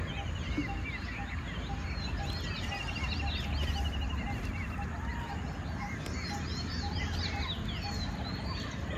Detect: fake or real real